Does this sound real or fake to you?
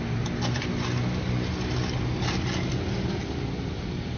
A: real